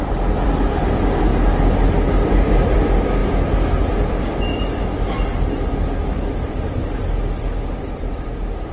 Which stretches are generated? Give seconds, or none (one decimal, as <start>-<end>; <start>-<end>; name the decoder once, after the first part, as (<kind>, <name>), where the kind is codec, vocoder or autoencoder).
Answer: 0.0-1.3 (vocoder, BigVGAN v2); 2.1-3.2; 6.0-6.8; 7.9-8.7